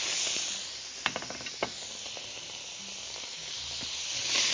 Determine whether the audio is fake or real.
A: real